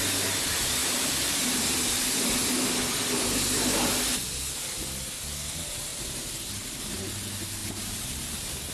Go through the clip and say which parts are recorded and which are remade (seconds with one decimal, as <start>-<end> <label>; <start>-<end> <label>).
0.0-0.8 recorded; 0.8-2.0 remade; 2.0-5.9 recorded; 5.9-7.0 remade; 7.0-7.6 recorded; 7.6-8.7 remade